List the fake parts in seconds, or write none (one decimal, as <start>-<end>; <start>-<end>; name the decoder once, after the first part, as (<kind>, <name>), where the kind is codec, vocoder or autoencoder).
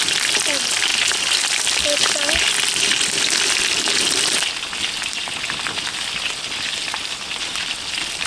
none